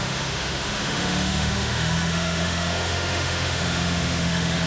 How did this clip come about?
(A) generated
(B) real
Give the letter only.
A